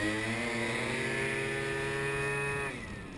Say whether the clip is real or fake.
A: real